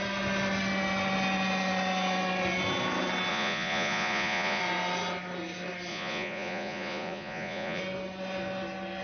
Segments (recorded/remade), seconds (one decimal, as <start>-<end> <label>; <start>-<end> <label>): 0.0-3.3 recorded; 3.3-4.6 remade; 4.6-5.9 recorded; 5.9-7.8 remade; 7.8-9.0 recorded